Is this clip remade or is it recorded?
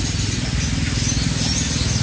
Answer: recorded